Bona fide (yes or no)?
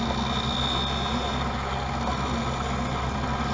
yes